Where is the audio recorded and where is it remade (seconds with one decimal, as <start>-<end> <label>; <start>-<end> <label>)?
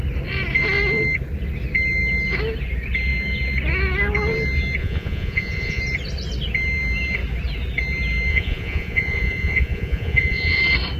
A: 0.0-4.8 recorded; 4.8-5.8 remade; 5.8-8.3 recorded; 8.3-10.6 remade; 10.6-11.0 recorded